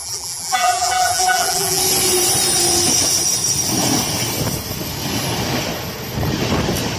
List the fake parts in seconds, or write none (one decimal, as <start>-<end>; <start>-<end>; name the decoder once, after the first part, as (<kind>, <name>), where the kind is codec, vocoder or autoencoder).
0.0-1.8 (vocoder, BigVGAN v2)